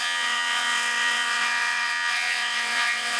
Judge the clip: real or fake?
fake